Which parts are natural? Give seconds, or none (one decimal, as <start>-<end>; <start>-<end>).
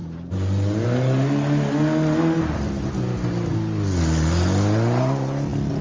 0.0-5.8